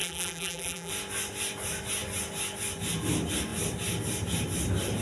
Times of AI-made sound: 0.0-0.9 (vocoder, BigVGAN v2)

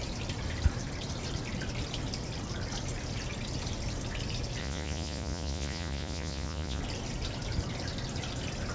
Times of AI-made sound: 4.6-6.8 (vocoder, Vocos)

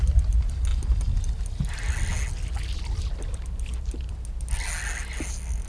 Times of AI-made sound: none

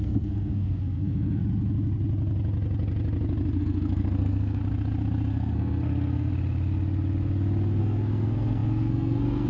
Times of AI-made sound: 0.0-1.4 (codec, SNAC); 3.6-4.6; 5.3-6.3; 7.8-9.5

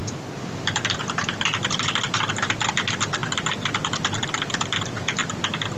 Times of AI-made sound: none